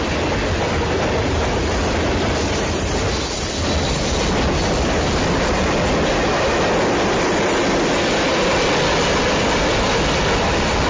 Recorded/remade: recorded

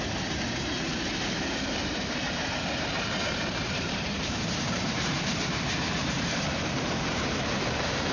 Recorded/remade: remade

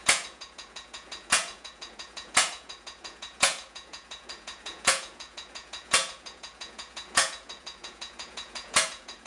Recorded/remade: remade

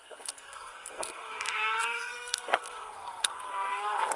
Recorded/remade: remade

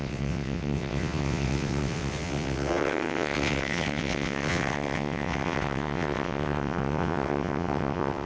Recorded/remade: remade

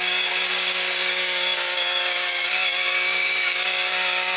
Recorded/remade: remade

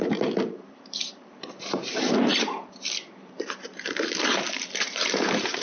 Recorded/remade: remade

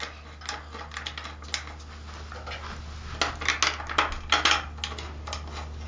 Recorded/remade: recorded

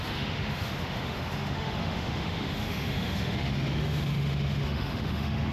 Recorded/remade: remade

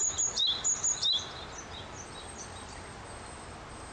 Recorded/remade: recorded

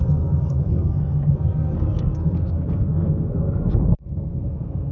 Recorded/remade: remade